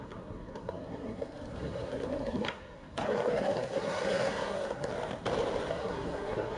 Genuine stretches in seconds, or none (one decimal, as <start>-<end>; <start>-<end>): 4.9-5.7